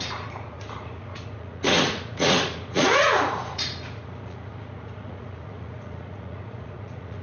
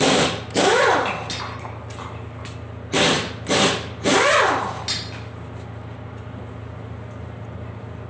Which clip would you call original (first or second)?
second